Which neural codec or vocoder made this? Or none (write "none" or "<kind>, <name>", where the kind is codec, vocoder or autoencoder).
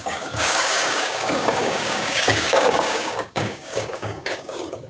codec, DAC